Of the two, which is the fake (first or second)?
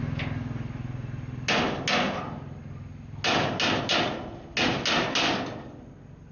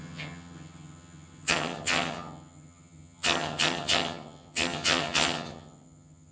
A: second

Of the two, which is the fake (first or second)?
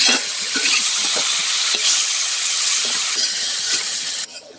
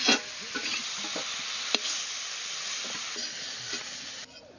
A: first